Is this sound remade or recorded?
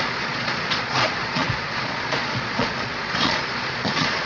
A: remade